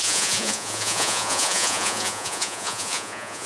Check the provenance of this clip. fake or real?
fake